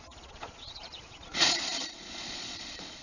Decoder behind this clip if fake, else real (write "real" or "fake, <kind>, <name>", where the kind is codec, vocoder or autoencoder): fake, vocoder, Vocos